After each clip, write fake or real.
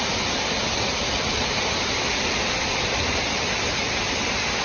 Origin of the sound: real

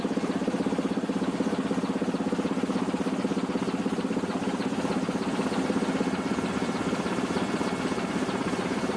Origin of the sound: real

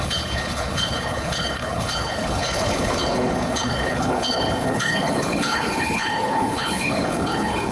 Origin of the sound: fake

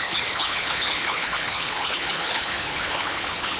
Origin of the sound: fake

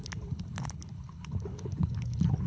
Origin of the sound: fake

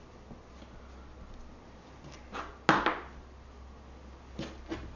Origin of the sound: real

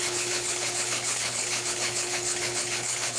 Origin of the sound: fake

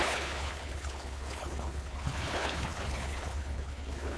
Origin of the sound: fake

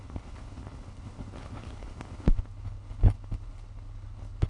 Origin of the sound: fake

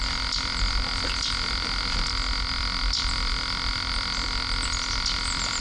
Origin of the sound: real